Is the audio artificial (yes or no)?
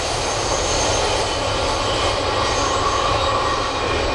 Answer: no